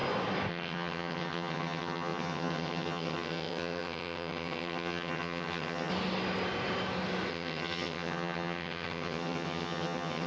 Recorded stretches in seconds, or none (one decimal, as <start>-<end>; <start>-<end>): 0.0-0.5; 5.9-7.3